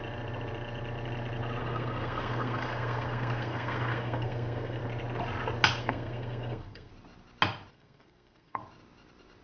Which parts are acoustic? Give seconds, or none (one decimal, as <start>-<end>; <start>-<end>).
0.0-1.6; 4.8-5.8; 6.9-7.7; 8.6-9.4